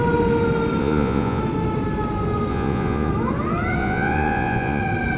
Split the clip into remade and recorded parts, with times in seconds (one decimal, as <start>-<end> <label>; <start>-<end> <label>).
0.0-0.8 recorded; 0.8-1.4 remade; 1.4-2.5 recorded; 2.5-3.1 remade; 3.1-3.8 recorded; 3.8-4.8 remade; 4.8-5.2 recorded